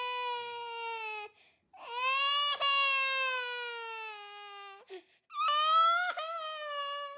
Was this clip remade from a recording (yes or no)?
no